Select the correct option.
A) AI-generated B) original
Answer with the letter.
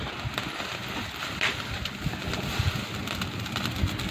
B